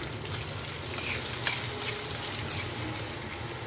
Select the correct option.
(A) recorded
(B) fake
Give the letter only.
A